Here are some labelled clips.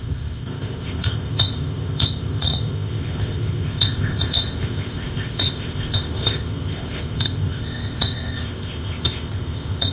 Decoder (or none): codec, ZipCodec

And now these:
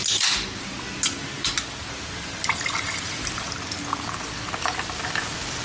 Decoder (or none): none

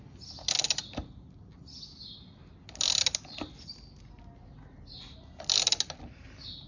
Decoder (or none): none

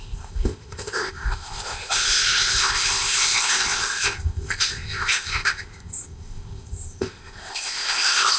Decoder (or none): codec, ZipCodec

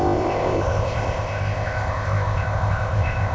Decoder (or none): codec, ZipCodec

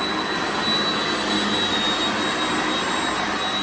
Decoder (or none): none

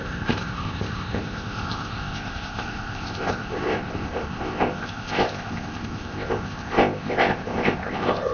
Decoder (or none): codec, ZipCodec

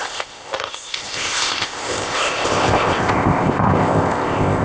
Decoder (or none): codec, ZipCodec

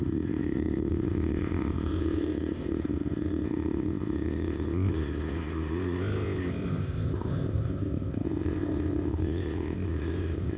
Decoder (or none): codec, ZipCodec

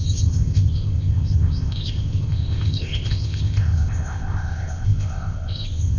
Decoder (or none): codec, ZipCodec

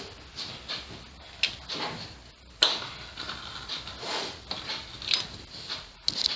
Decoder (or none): none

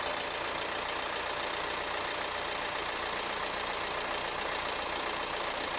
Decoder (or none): none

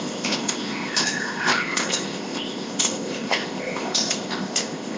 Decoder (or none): codec, ZipCodec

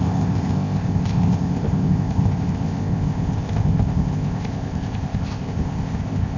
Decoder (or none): codec, ZipCodec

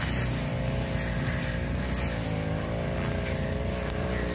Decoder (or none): none